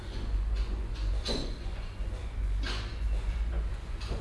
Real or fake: fake